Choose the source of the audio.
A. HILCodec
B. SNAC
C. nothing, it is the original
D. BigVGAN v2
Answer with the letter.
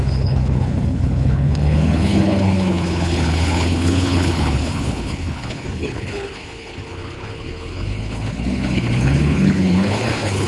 A